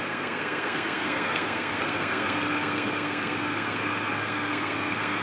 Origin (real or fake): fake